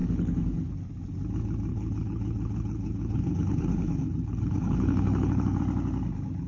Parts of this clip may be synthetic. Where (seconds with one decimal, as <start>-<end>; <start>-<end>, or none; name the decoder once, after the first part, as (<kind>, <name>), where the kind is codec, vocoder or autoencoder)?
0.0-0.7 (codec, HILCodec); 1.7-5.6

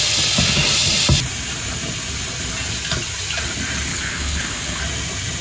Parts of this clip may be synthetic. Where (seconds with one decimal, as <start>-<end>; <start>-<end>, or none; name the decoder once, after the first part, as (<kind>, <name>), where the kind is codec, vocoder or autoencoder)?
3.9-4.8 (codec, HILCodec)

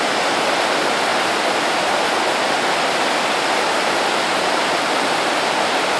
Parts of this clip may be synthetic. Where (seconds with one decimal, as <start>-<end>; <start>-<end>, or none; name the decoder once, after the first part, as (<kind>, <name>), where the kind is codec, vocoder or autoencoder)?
none

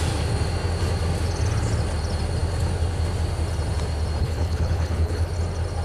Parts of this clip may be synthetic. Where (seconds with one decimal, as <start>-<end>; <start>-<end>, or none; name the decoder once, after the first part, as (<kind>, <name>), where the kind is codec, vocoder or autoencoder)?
4.2-5.3 (codec, HILCodec)

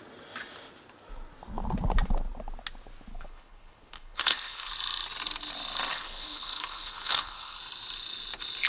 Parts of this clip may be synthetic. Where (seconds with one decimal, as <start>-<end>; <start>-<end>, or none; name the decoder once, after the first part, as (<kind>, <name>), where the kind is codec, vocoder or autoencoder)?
3.1-4.7 (codec, HILCodec); 5.9-7.6

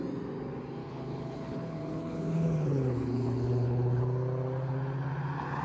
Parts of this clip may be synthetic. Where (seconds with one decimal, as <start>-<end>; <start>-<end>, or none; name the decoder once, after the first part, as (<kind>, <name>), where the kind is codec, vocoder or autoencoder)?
0.8-4.0 (codec, HILCodec)

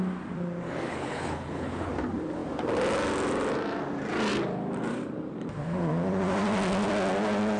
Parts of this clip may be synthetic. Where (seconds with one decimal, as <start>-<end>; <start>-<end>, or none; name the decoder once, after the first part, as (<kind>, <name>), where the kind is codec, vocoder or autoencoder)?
0.9-1.9 (codec, HILCodec)